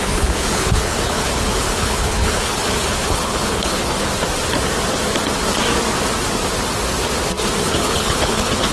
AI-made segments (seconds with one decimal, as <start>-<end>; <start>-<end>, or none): 0.0-4.1; 7.6-8.7